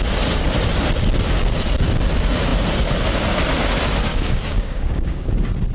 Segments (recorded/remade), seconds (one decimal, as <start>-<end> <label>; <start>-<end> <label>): 0.0-4.1 recorded; 4.1-5.3 remade; 5.3-5.7 recorded